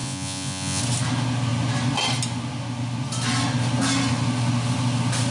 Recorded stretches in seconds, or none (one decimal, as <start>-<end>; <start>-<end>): 0.8-5.3

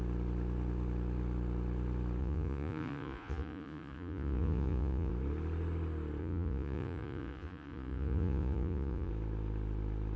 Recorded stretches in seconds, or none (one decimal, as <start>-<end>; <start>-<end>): 0.0-2.2; 5.1-6.2; 9.1-10.2

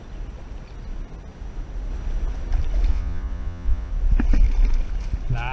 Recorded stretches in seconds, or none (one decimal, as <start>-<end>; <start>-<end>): 0.0-2.9; 3.9-5.5

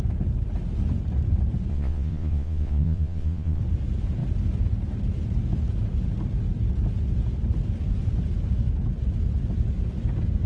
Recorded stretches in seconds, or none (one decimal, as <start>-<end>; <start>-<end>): 0.0-1.7; 3.6-10.5

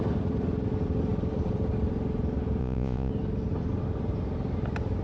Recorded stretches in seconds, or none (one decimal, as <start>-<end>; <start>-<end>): 0.0-2.6; 3.1-5.0

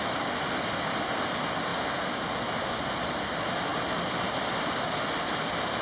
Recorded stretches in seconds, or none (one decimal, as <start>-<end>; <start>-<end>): 0.0-5.8